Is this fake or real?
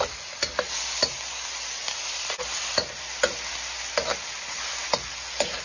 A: real